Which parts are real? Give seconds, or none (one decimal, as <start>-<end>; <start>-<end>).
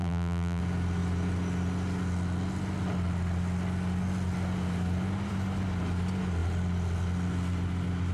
0.6-8.1